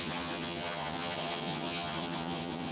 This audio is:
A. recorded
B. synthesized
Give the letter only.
B